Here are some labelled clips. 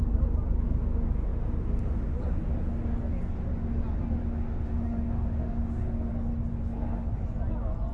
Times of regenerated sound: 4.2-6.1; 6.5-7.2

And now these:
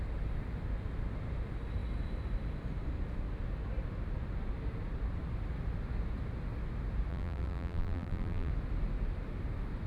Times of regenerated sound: 7.1-8.5

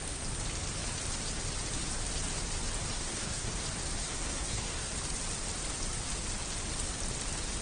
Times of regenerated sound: 2.9-3.5; 4.0-4.9

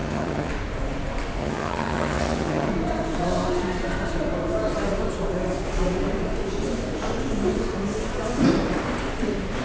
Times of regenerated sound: 0.0-0.5; 1.4-2.7

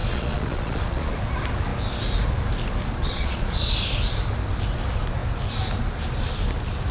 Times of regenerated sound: 0.0-1.1; 3.0-3.6

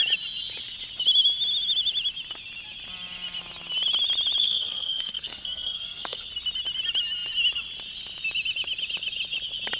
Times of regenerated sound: 4.4-6.3